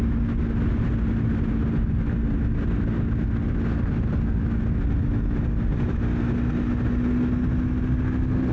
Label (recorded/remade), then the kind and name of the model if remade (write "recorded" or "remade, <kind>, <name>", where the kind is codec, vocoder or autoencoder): recorded